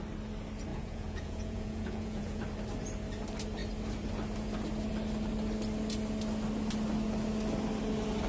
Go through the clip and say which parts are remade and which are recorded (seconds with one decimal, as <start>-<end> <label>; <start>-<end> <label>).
0.0-0.7 recorded; 0.7-2.4 remade; 2.4-8.3 recorded

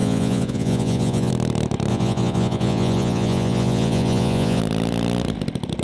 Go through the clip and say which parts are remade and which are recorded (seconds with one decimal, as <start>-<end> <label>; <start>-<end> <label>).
0.0-1.3 remade; 1.3-1.9 recorded; 1.9-4.6 remade; 4.6-5.8 recorded

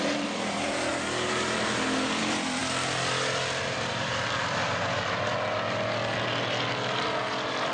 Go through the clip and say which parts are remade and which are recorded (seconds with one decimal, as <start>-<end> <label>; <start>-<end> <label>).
0.0-0.9 remade; 0.9-2.2 recorded; 2.2-2.6 remade; 2.6-3.6 recorded; 3.6-4.6 remade; 4.6-7.3 recorded; 7.3-7.7 remade

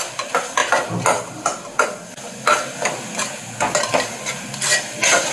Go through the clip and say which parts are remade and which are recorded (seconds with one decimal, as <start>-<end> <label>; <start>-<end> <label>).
0.0-5.3 recorded

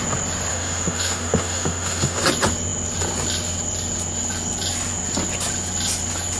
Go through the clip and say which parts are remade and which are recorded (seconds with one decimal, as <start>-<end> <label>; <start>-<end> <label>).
0.0-0.5 recorded; 0.5-2.2 remade; 2.2-6.4 recorded

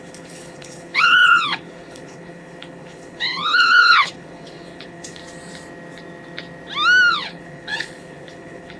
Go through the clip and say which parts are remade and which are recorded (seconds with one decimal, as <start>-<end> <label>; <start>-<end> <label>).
0.0-5.2 remade; 5.2-7.1 recorded; 7.1-8.8 remade

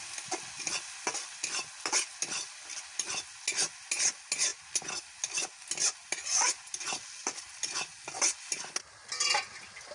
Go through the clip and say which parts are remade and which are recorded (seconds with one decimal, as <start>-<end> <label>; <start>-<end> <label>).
0.0-9.9 recorded